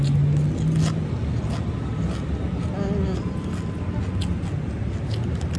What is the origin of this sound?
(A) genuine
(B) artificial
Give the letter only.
A